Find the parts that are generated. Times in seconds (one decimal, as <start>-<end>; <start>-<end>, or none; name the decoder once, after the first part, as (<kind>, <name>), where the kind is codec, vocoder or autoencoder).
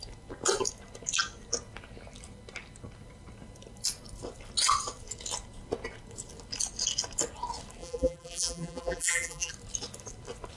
7.8-9.5 (vocoder, BigVGAN v2)